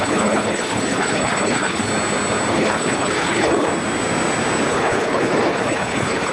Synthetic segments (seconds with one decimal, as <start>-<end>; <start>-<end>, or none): 0.0-1.9; 2.5-3.7; 4.7-6.3